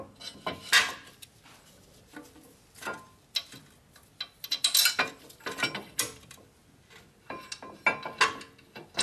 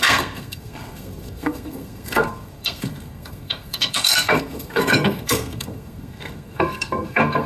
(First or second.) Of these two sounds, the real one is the first